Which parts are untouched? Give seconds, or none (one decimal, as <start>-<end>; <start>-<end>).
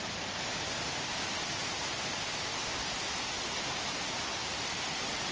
0.0-5.3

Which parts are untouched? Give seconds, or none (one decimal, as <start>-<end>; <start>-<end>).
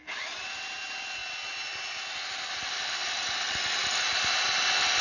0.0-5.0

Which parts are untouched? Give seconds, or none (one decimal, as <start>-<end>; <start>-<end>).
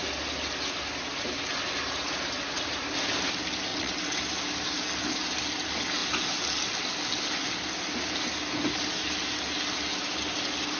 0.0-3.7; 4.2-10.8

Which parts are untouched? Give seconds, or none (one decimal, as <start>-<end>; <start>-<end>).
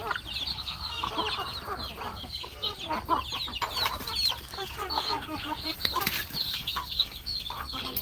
0.0-0.5; 1.1-2.1; 2.8-4.5; 6.0-6.4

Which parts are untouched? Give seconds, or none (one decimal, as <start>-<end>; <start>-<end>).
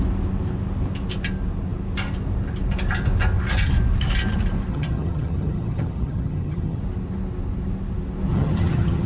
0.0-4.7; 6.8-8.3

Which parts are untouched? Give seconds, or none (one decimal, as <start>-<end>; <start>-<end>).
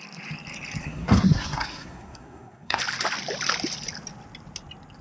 0.0-0.8; 2.8-5.0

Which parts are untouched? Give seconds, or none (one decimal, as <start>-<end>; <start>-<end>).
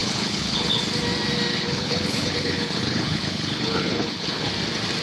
0.8-1.5; 4.5-5.0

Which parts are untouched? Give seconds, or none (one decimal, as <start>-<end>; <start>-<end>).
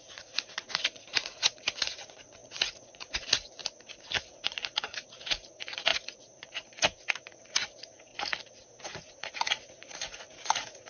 3.6-4.2; 8.1-8.8